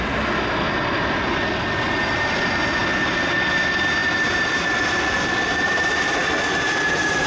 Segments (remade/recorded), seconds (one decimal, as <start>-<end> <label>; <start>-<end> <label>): 0.0-4.0 recorded; 4.0-5.7 remade; 5.7-6.2 recorded; 6.2-6.8 remade; 6.8-7.3 recorded